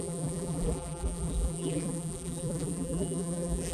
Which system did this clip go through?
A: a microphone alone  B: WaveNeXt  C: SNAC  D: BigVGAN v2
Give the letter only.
D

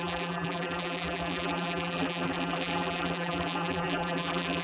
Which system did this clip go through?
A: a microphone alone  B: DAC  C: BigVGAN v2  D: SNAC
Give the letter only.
C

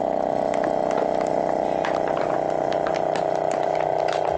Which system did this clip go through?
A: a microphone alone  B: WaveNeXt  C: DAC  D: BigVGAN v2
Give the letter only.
A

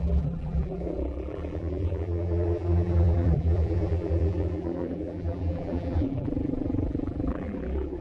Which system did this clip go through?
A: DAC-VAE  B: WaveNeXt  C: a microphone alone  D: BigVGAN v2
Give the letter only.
D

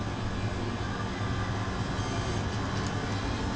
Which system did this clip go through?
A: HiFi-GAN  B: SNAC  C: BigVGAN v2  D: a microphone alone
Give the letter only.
D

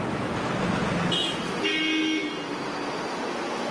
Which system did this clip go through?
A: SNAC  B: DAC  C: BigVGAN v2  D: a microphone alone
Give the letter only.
D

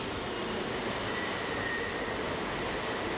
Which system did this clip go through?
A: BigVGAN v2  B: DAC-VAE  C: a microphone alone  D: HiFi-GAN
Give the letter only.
C